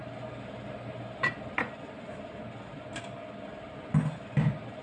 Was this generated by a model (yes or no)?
no